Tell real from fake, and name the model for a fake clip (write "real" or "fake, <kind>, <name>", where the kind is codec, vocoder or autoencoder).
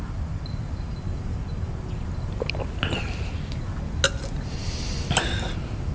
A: real